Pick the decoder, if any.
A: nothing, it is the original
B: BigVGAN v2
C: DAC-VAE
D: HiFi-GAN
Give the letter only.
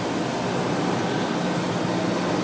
A